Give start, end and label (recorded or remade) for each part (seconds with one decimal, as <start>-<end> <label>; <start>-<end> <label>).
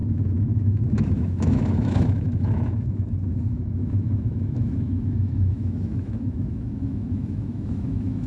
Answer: 0.0-8.3 remade